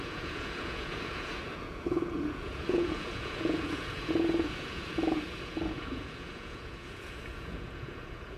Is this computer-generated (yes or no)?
yes